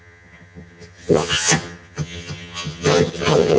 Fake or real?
fake